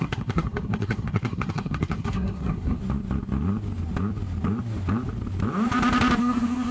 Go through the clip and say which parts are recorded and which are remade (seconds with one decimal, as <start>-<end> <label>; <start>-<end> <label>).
0.0-2.8 remade; 2.8-6.2 recorded; 6.2-6.7 remade